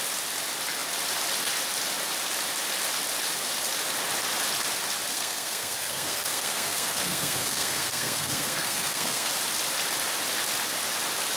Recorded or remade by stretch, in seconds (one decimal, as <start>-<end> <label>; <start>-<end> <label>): 0.0-5.1 recorded; 5.1-9.3 remade; 9.3-11.4 recorded